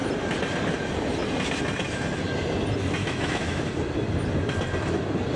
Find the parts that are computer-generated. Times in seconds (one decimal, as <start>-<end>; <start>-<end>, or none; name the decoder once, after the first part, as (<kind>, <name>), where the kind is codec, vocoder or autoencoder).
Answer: 3.0-3.6 (autoencoder, DAC-VAE)